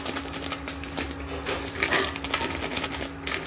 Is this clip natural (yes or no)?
yes